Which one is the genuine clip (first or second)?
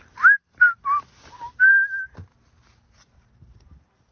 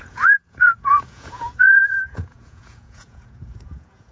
first